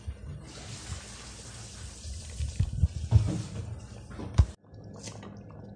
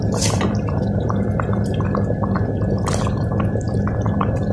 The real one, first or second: first